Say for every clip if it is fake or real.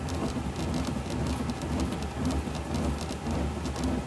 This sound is real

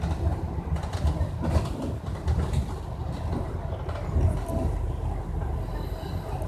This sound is real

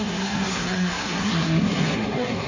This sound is fake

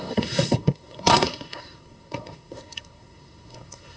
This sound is fake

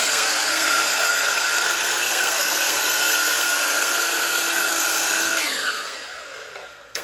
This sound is fake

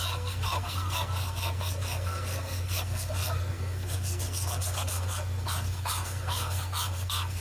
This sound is fake